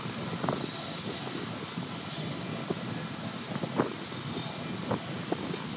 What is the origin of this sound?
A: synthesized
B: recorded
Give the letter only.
B